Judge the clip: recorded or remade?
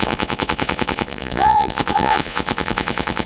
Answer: remade